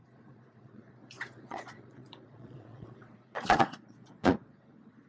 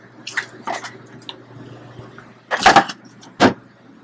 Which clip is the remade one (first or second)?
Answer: first